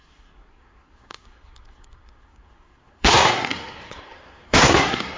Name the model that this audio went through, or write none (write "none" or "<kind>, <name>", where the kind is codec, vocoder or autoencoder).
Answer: codec, SNAC